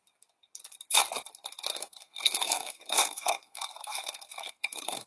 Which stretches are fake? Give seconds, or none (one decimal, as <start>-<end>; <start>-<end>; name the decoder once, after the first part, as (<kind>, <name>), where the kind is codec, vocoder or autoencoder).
1.7-5.1 (codec, SNAC)